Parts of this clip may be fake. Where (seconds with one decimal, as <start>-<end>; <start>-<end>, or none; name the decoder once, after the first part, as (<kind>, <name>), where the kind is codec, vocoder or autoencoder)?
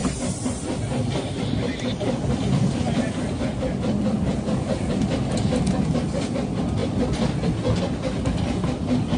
0.0-4.9 (vocoder, BigVGAN v2)